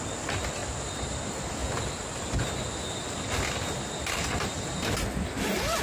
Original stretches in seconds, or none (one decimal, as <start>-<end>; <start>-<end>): 0.0-0.6; 1.2-5.8